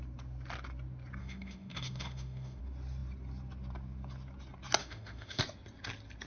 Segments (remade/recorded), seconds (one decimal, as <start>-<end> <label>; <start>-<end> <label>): 0.0-1.2 recorded; 1.2-2.6 remade; 2.6-4.8 recorded; 4.8-5.4 remade; 5.4-6.3 recorded